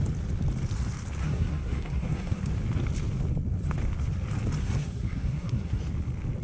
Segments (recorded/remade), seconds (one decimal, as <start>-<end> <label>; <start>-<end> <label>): 0.0-1.2 recorded; 1.2-2.4 remade; 2.4-4.6 recorded; 4.6-5.8 remade; 5.8-6.4 recorded